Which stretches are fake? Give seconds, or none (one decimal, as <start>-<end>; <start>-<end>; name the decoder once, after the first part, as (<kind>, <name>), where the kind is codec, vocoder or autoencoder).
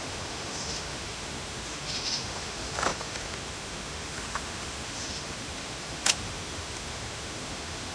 0.0-7.9 (autoencoder, DAC-VAE)